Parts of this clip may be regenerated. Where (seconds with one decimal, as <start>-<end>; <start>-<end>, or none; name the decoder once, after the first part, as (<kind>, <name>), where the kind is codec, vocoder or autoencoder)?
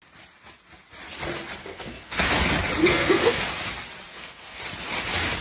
1.6-2.3 (codec, SNAC); 2.8-3.4; 4.1-4.6